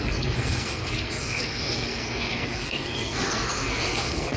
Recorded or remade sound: remade